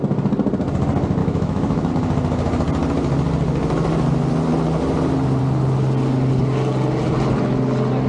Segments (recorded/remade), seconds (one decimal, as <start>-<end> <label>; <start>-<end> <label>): 0.0-1.2 recorded; 1.2-1.9 remade; 1.9-8.1 recorded